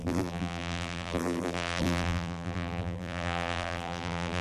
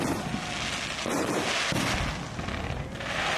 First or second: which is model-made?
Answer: first